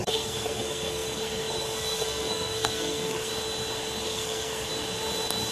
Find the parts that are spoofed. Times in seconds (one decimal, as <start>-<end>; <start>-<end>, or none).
0.0-3.3; 4.0-4.7